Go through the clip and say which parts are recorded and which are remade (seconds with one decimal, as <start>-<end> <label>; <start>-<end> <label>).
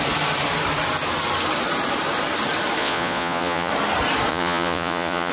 0.0-2.8 recorded; 2.8-3.7 remade; 3.7-4.3 recorded; 4.3-5.3 remade